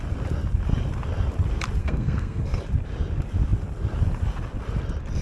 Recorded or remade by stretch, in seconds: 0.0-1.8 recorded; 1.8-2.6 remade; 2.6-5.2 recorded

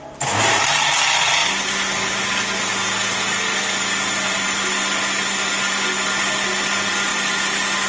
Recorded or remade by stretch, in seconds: 0.0-7.9 recorded

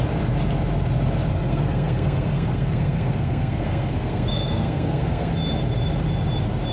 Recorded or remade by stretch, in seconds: 0.0-1.3 recorded; 1.3-5.3 remade; 5.3-6.7 recorded

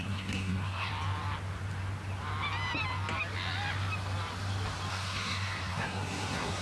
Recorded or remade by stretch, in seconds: 0.0-0.9 remade; 0.9-4.9 recorded; 4.9-6.6 remade

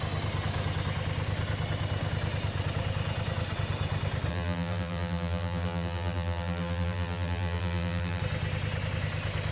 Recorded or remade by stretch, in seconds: 0.0-4.3 recorded; 4.3-8.2 remade; 8.2-9.5 recorded

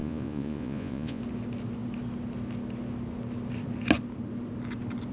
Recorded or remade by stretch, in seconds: 0.0-1.2 remade; 1.2-5.1 recorded